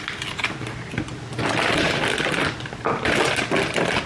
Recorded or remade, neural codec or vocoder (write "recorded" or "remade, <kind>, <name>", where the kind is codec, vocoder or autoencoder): recorded